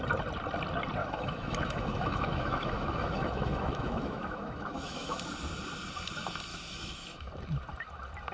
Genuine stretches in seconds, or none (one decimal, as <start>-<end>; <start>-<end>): 0.0-1.0; 5.3-6.5; 7.3-8.3